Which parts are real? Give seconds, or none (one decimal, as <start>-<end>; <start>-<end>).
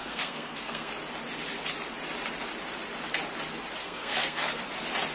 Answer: 0.9-3.8; 4.6-5.1